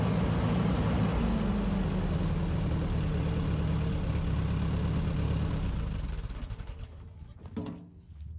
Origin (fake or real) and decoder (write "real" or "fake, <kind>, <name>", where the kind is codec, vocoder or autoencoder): real